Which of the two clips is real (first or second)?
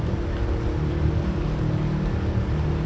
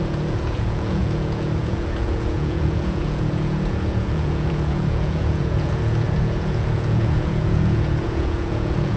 first